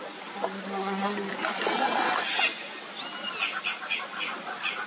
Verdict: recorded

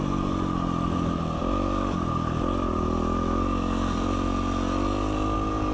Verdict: recorded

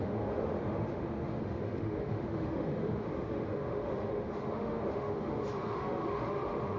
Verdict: remade